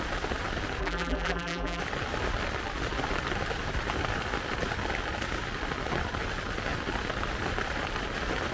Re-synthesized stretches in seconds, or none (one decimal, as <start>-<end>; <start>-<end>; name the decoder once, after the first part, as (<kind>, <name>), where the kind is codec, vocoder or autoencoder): 0.8-1.8 (vocoder, BigVGAN v2)